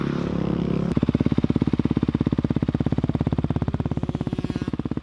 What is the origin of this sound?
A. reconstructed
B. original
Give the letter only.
B